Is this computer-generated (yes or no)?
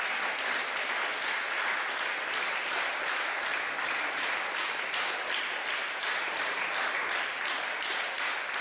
no